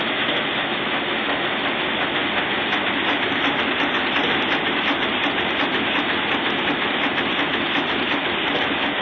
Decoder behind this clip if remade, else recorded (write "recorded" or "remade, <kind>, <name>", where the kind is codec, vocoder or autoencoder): recorded